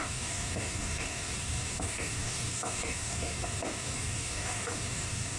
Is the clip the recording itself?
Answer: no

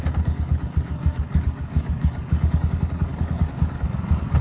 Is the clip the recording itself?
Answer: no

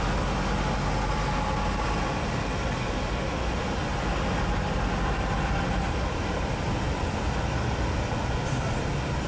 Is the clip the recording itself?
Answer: yes